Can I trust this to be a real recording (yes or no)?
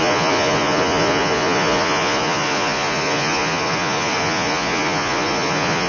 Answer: no